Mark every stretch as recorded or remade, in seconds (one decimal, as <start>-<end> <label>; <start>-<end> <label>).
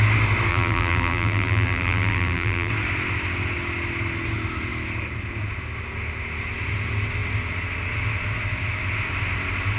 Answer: 0.0-0.5 recorded; 0.5-2.7 remade; 2.7-9.8 recorded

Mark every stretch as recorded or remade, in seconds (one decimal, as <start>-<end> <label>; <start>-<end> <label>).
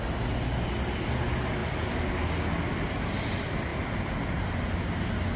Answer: 0.0-5.4 recorded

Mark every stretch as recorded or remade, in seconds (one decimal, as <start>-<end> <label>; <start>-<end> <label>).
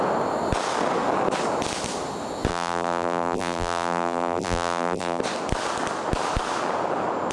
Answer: 0.0-2.5 recorded; 2.5-5.2 remade; 5.2-7.3 recorded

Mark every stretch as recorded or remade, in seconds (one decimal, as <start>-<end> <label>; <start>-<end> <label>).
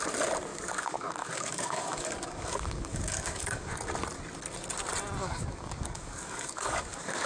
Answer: 0.0-0.5 recorded; 0.5-3.9 remade; 3.9-5.2 recorded; 5.2-7.3 remade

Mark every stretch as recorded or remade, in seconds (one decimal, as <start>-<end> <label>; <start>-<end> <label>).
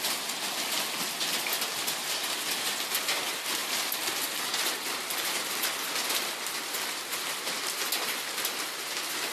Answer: 0.0-9.3 recorded